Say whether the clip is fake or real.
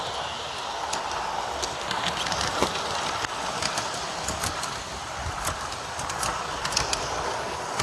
real